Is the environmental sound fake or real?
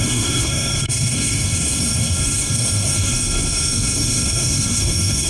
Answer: fake